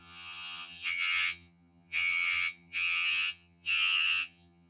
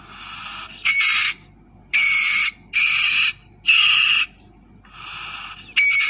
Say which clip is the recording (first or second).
second